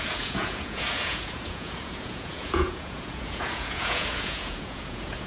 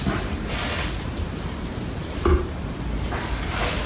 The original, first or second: second